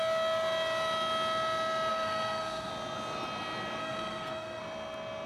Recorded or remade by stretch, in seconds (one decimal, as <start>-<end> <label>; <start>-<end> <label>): 0.0-1.9 recorded; 1.9-2.7 remade; 2.7-3.8 recorded; 3.8-4.6 remade; 4.6-5.3 recorded